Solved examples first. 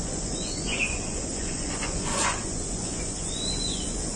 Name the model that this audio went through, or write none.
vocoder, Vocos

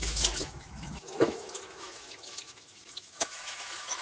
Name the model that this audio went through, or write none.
autoencoder, DAC-VAE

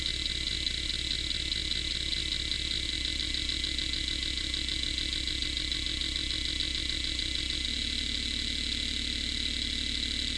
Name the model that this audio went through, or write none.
none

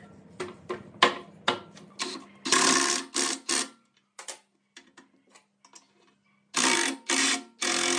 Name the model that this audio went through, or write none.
none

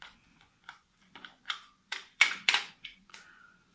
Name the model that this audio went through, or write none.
vocoder, Vocos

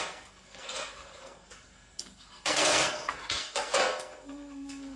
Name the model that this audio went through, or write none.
codec, SNAC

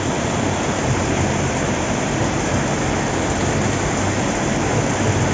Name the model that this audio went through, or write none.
none